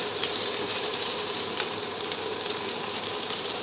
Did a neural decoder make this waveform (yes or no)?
yes